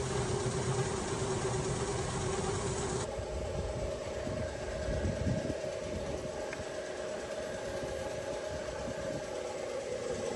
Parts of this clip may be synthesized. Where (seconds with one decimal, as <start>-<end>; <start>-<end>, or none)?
none